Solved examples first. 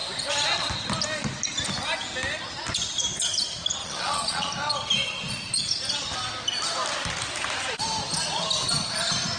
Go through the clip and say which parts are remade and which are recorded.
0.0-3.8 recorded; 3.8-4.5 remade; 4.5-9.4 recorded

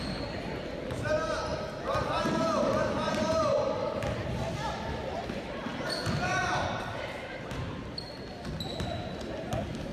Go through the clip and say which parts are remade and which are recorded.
0.0-9.9 recorded

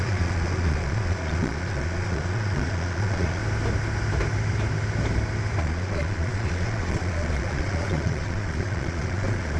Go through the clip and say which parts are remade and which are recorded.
0.0-3.4 remade; 3.4-5.6 recorded; 5.6-9.6 remade

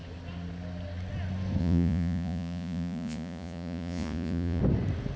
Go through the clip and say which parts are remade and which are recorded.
0.0-1.6 recorded; 1.6-4.6 remade; 4.6-5.2 recorded

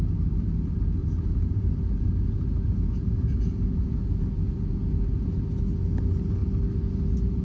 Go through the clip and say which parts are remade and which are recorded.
0.0-1.0 recorded; 1.0-5.4 remade; 5.4-7.4 recorded